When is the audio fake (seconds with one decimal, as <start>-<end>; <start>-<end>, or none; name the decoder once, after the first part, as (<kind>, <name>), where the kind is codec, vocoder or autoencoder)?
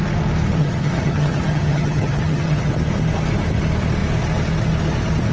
0.6-2.7 (vocoder, HiFi-GAN)